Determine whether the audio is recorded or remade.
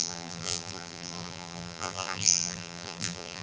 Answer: remade